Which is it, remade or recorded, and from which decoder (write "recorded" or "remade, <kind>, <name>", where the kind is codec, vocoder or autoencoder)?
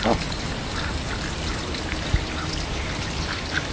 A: recorded